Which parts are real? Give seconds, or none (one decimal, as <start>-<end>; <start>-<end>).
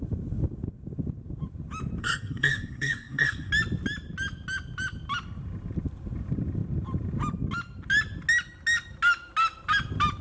0.0-2.0; 3.5-10.2